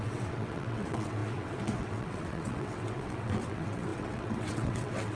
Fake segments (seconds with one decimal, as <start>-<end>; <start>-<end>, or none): 0.0-5.2

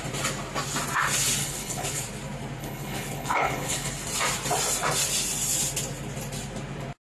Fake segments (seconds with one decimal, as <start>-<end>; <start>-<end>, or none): 1.4-2.0; 2.6-3.9